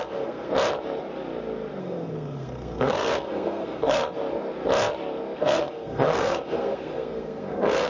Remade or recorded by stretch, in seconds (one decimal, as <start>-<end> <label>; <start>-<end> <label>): 0.0-0.5 remade; 0.5-1.8 recorded; 1.8-4.2 remade; 4.2-5.4 recorded; 5.4-7.9 remade